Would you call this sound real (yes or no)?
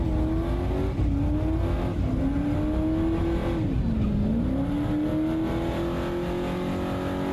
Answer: yes